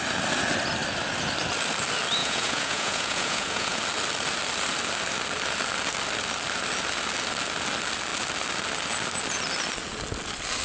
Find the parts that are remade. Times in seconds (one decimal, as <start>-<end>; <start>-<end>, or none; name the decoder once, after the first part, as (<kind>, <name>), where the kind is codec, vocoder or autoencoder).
2.2-3.8 (vocoder, Vocos)